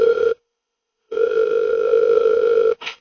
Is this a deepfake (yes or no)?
yes